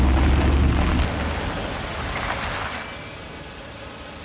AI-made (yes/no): no